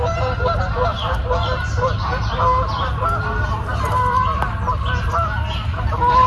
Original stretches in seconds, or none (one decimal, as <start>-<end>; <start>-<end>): 0.0-6.3

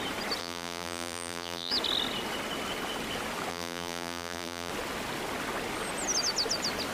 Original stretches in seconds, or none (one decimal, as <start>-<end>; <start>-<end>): 0.0-0.4; 1.7-3.5; 4.7-6.9

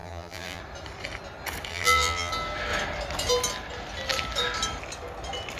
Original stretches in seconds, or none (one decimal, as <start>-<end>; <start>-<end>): 0.6-1.7; 2.3-5.6

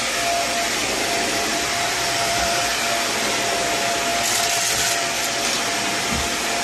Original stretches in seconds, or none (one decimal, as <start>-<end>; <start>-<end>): 0.0-0.8; 2.7-6.6

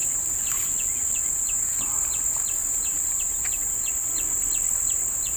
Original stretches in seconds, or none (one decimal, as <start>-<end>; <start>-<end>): 0.6-1.0; 1.9-2.6; 4.1-5.4

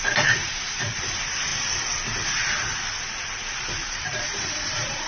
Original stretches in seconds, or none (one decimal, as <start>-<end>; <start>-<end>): 1.5-3.9

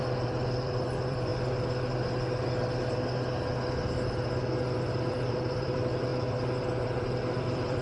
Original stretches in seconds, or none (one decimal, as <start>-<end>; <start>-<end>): 1.3-5.1; 6.1-6.8

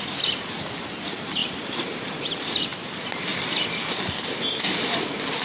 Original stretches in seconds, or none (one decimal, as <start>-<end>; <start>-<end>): 0.0-1.4; 2.3-5.4